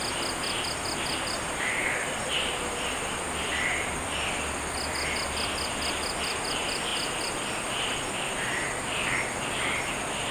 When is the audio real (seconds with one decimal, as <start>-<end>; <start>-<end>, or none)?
0.0-10.3